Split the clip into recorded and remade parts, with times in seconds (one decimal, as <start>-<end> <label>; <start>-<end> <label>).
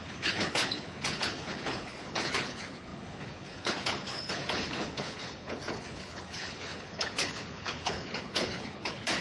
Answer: 0.0-9.2 remade